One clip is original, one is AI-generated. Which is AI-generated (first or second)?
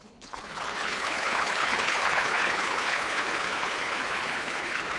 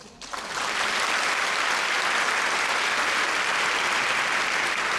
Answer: first